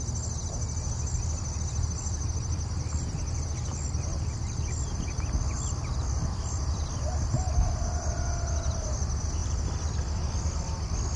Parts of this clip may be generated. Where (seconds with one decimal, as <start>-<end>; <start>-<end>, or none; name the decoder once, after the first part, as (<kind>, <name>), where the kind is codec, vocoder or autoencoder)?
none